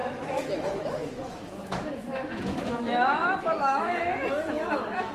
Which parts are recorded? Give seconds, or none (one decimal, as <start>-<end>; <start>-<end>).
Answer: none